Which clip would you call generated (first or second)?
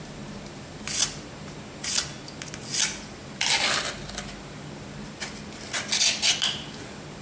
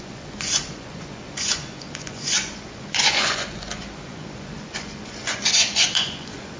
second